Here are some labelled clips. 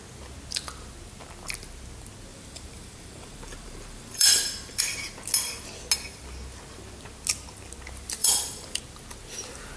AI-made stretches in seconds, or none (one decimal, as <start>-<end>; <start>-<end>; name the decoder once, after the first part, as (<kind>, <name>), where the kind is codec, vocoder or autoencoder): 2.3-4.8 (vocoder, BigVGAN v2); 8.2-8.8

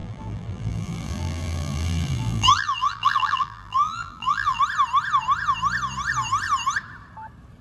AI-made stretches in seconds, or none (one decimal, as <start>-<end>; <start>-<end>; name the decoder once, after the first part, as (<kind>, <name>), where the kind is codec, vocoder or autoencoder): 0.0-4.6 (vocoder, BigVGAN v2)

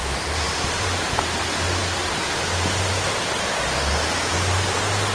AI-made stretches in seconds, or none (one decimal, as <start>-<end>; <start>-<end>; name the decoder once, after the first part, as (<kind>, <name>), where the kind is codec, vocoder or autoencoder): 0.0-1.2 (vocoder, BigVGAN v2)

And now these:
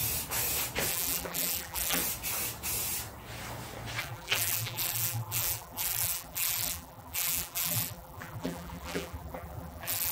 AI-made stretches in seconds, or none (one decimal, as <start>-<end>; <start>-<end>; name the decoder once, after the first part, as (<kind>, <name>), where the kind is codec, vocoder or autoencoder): 0.9-2.0 (vocoder, BigVGAN v2); 4.0-10.1

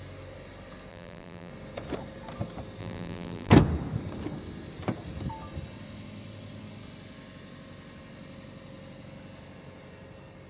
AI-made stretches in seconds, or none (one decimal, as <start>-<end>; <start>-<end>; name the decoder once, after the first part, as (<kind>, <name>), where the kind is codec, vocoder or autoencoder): 0.9-1.5 (vocoder, BigVGAN v2); 2.8-3.5

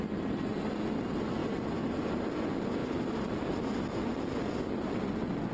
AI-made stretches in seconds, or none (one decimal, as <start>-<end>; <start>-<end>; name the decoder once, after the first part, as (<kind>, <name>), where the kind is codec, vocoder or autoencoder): 1.4-2.2 (vocoder, BigVGAN v2); 2.8-4.6

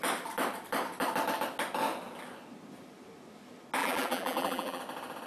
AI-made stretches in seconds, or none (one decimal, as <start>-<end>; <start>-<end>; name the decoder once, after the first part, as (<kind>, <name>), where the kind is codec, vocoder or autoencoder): 3.8-4.8 (vocoder, BigVGAN v2)